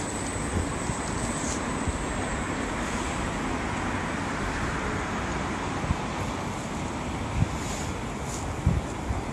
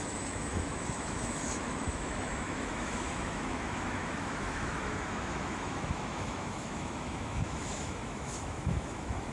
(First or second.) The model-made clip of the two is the second